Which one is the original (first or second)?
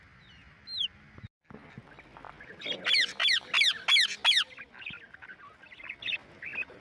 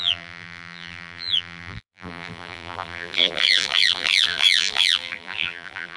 first